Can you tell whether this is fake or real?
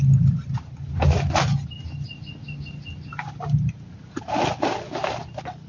real